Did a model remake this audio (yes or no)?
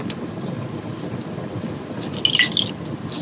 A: no